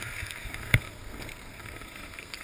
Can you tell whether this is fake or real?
fake